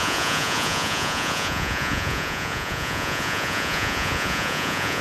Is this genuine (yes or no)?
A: no